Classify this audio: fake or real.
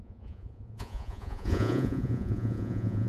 fake